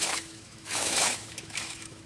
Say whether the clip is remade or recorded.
remade